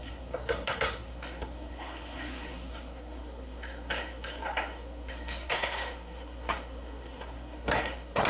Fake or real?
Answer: fake